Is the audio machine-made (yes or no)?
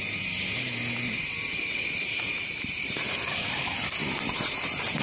yes